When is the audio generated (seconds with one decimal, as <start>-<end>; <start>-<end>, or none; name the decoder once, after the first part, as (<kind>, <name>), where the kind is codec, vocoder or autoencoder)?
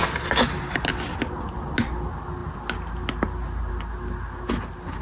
none